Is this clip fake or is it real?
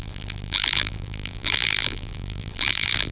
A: fake